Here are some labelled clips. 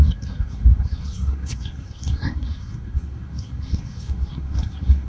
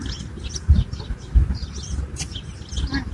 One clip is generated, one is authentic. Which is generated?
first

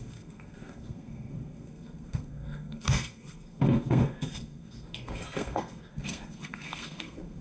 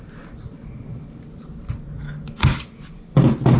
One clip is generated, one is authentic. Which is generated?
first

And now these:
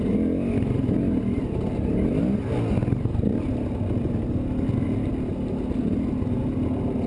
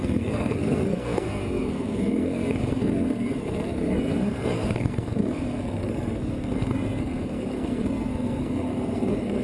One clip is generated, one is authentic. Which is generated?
second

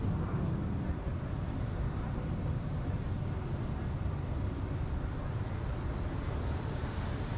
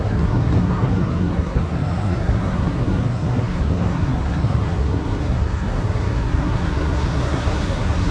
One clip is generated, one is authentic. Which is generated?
second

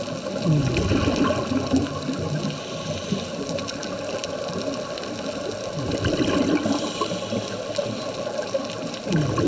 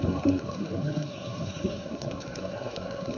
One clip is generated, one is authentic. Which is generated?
second